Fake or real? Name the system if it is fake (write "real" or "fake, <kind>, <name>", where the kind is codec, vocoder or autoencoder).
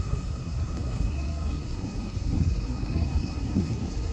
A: fake, codec, SNAC